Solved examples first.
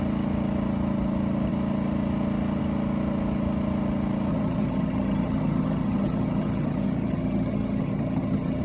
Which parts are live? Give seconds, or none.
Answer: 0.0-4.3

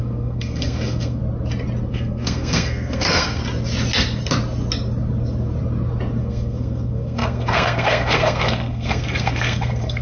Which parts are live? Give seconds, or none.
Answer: 1.2-1.9; 3.4-6.2

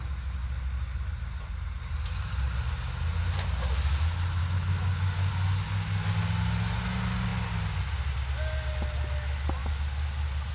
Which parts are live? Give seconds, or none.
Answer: 0.0-4.4; 5.3-10.5

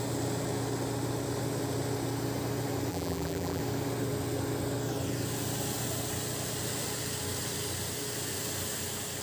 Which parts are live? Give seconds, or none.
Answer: 0.0-2.9; 3.6-9.2

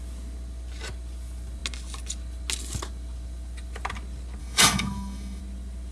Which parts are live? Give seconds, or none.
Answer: 0.0-4.4; 5.4-5.9

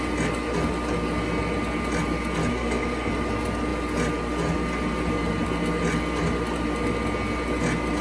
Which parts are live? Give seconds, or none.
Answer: 0.0-2.5; 3.1-8.0